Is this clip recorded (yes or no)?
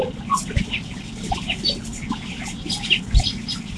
yes